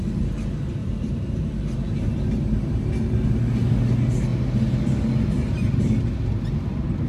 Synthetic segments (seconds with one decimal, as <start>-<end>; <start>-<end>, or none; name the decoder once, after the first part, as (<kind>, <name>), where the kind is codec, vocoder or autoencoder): 0.8-2.9 (vocoder, BigVGAN v2)